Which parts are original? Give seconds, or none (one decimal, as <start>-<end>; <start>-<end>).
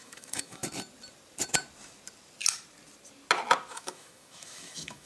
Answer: 0.6-3.7